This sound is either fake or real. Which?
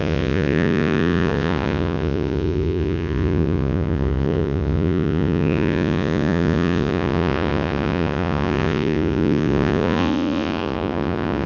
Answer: fake